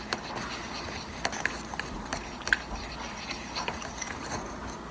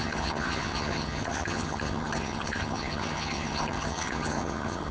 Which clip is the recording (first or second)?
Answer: first